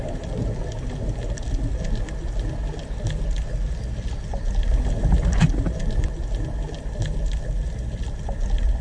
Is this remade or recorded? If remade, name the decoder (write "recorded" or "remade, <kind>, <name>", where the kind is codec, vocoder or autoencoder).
recorded